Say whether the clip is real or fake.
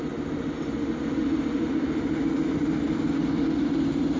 real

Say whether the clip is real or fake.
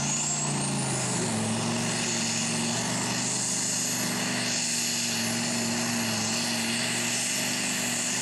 real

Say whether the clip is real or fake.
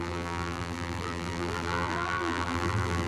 fake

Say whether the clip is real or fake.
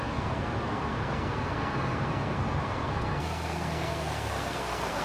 fake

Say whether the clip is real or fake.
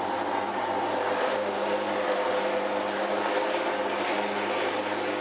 real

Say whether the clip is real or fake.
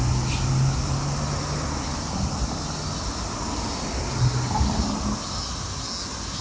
real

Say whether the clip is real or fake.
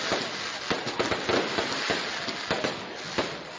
real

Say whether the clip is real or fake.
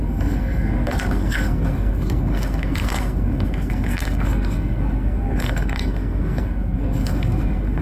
fake